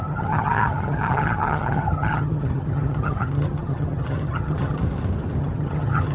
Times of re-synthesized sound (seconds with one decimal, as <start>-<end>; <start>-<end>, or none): 0.0-4.8; 5.4-6.1